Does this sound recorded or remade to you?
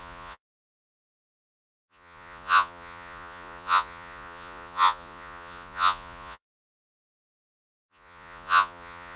remade